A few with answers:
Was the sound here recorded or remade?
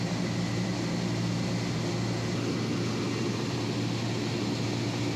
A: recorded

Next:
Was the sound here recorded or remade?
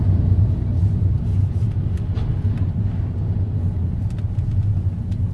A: recorded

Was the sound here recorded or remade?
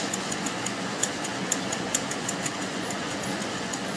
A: remade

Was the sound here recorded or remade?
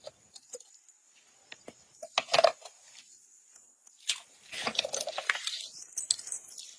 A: recorded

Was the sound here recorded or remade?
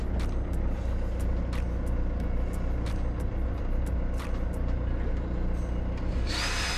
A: recorded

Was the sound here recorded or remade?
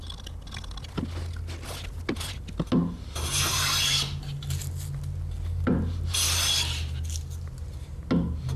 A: recorded